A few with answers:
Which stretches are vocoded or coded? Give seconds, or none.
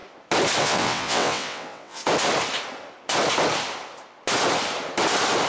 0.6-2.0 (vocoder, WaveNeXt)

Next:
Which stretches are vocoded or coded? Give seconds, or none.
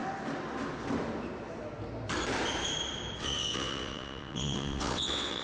3.2-5.4 (vocoder, WaveNeXt)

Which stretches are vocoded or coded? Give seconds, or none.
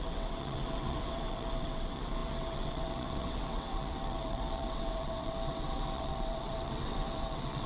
0.0-7.7 (vocoder, WaveNeXt)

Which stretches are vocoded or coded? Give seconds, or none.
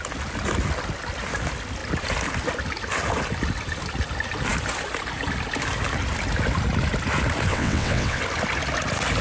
7.5-8.2 (vocoder, WaveNeXt)